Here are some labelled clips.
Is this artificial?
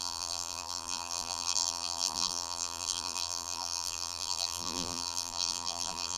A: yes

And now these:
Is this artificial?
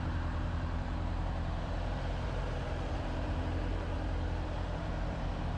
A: yes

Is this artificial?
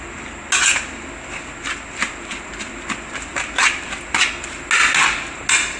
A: no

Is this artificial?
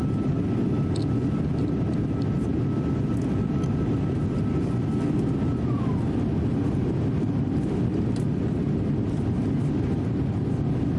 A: no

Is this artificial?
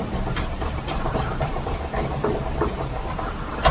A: yes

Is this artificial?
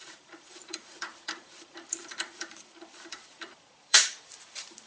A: yes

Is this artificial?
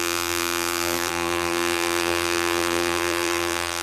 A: yes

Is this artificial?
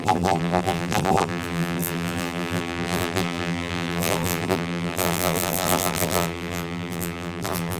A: yes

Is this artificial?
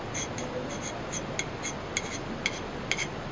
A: no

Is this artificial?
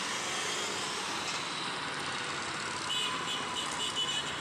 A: no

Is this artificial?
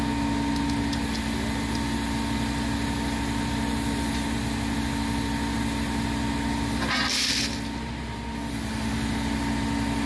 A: no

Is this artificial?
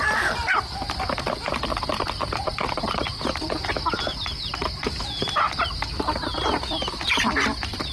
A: yes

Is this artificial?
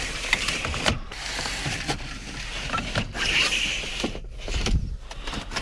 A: yes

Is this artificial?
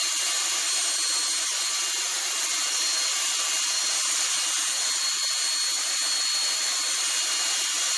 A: no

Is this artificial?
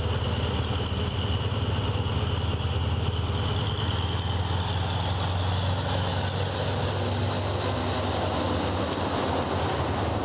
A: no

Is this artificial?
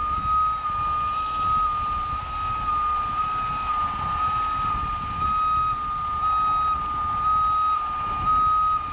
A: no